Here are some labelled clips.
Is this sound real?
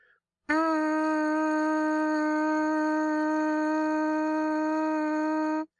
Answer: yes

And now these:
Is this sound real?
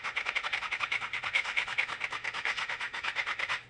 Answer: no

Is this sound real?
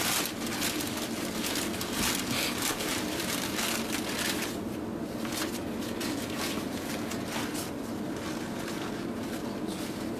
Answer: yes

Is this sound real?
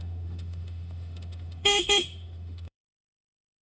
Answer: no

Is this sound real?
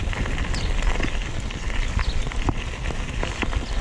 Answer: yes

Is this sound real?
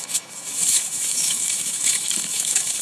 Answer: no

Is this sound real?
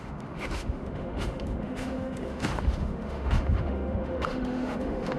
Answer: no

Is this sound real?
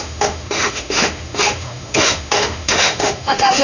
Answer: no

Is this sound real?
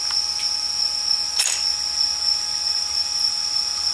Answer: yes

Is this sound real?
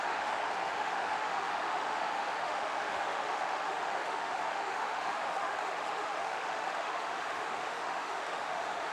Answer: no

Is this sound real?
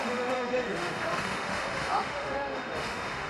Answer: no